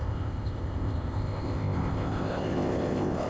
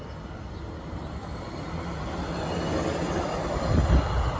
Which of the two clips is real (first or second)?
second